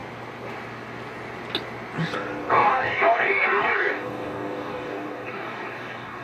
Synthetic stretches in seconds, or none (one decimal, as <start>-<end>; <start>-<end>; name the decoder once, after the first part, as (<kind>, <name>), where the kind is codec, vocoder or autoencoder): 2.5-6.2 (codec, DAC)